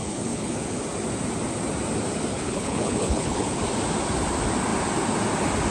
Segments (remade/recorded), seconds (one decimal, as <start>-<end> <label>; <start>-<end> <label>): 0.0-0.8 remade; 0.8-2.3 recorded; 2.3-3.6 remade; 3.6-5.7 recorded